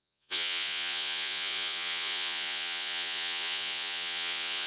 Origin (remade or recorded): remade